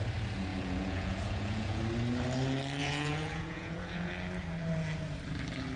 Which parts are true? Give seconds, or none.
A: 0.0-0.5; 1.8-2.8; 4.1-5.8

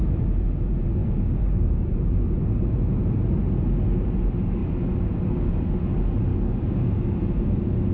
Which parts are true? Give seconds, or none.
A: 0.0-1.0; 1.9-6.3; 6.9-7.9

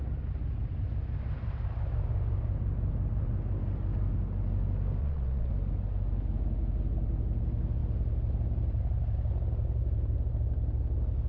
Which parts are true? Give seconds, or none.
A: 0.0-5.0; 5.5-11.3

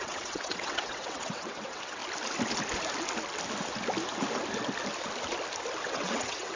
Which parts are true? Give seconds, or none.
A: 2.0-5.8

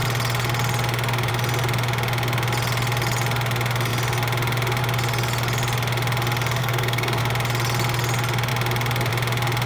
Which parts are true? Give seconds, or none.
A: 0.0-6.6; 7.2-9.7